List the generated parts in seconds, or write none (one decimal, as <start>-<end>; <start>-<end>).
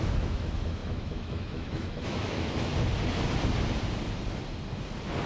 0.0-2.7